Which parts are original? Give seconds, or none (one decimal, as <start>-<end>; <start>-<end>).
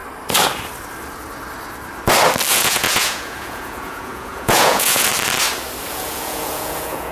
0.0-2.5; 5.1-5.9